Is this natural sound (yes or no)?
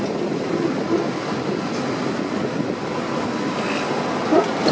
yes